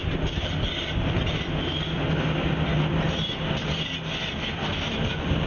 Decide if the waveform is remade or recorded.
recorded